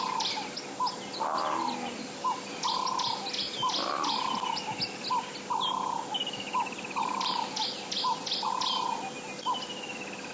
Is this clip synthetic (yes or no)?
no